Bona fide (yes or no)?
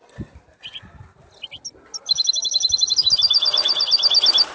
yes